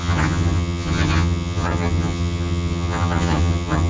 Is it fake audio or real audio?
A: fake